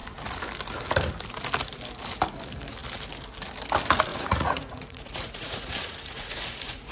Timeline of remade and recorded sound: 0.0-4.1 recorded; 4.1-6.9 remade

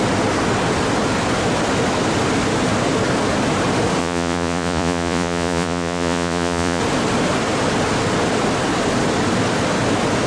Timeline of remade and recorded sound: 0.0-4.0 recorded; 4.0-6.8 remade; 6.8-10.3 recorded